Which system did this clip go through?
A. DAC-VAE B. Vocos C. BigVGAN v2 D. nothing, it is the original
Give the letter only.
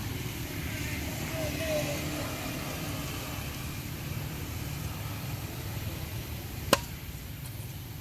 C